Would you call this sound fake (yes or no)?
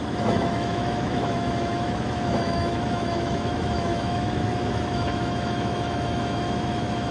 yes